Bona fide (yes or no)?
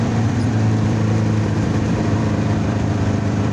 no